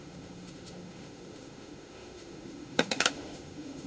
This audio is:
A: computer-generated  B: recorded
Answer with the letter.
A